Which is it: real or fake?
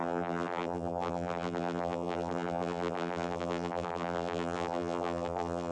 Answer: fake